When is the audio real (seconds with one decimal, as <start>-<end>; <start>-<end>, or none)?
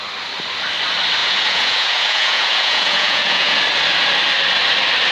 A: 0.0-1.2; 3.6-5.1